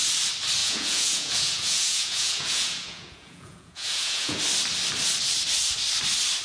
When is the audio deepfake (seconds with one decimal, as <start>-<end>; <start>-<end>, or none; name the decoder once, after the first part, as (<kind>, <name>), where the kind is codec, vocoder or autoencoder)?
0.6-4.4 (vocoder, Vocos)